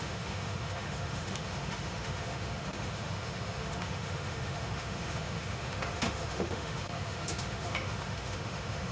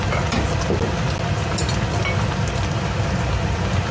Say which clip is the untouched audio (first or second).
second